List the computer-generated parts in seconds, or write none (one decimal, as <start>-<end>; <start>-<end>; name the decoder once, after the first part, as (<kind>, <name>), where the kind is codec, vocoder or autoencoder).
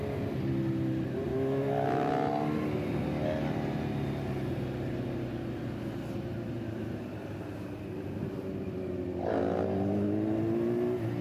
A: 1.3-2.1 (autoencoder, DAC-VAE)